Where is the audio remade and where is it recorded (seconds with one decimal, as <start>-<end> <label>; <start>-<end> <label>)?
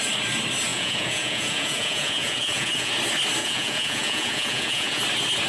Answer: 0.0-0.7 recorded; 0.7-2.9 remade; 2.9-3.4 recorded; 3.4-5.0 remade; 5.0-5.5 recorded